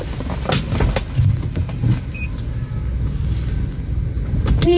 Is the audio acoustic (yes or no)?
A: yes